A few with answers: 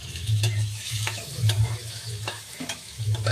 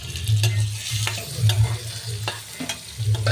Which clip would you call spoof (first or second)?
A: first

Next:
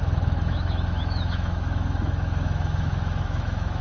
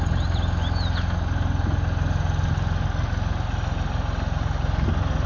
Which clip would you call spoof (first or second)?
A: first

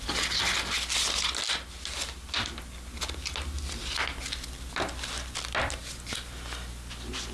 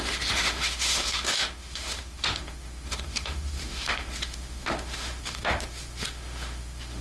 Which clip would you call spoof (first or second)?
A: second